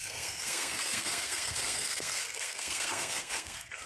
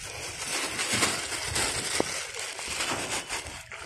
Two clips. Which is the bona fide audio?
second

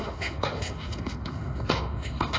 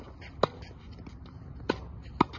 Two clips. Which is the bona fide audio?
second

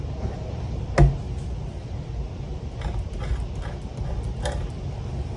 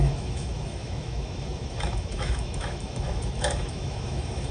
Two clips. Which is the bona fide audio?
first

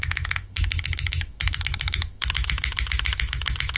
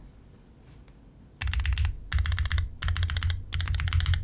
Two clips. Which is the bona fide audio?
second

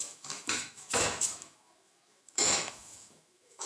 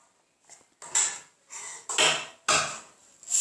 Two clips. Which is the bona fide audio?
second